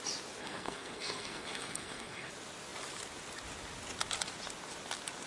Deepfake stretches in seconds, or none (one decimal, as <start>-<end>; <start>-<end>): 0.4-2.3

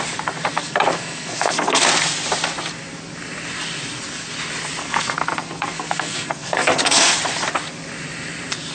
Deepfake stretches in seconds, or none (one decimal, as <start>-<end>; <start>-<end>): 0.5-1.8; 4.8-7.2

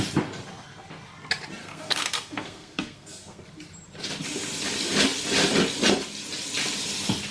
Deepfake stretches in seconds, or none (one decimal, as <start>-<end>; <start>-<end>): 1.6-3.4

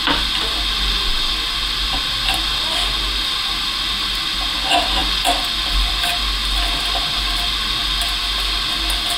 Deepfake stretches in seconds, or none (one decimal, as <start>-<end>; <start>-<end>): none

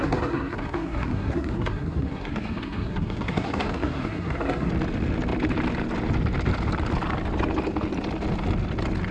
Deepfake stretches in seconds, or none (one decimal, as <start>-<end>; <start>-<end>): 0.0-4.7